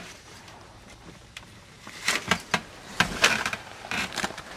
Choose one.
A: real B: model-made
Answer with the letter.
B